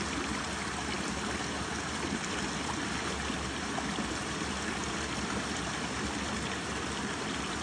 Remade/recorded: recorded